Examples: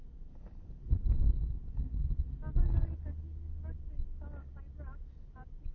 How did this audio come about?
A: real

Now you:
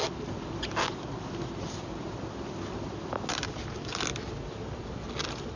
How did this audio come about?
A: real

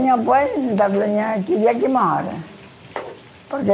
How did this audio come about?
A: real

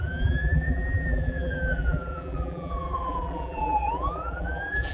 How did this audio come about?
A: fake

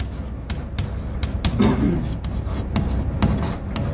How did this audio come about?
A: real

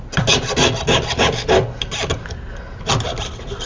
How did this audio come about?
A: real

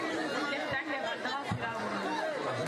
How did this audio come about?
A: real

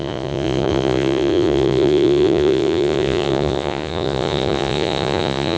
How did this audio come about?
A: fake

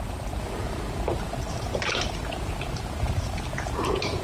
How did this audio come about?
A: fake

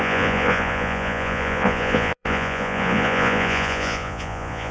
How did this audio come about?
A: fake